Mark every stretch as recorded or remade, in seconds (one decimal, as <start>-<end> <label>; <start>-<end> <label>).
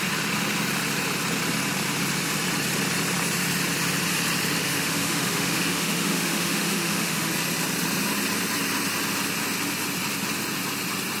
0.0-4.6 recorded; 4.6-7.3 remade; 7.3-11.2 recorded